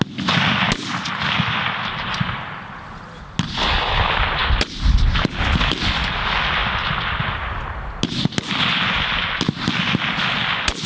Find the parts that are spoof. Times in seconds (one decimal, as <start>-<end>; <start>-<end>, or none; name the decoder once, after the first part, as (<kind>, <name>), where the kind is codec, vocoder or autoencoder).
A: none